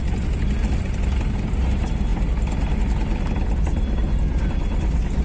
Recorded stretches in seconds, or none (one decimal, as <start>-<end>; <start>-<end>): 0.0-5.2